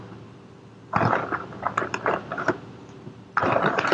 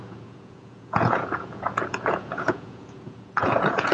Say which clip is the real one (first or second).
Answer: first